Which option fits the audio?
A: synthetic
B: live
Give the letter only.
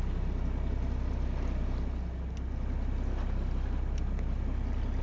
B